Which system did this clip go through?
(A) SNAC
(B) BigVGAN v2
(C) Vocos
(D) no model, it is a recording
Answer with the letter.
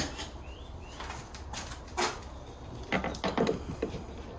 D